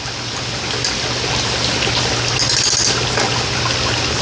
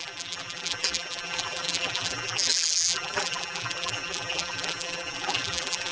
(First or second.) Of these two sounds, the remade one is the second